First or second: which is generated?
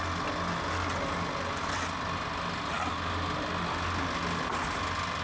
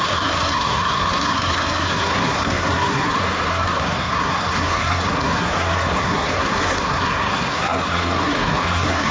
second